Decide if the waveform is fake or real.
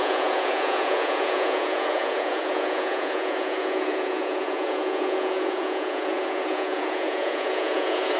fake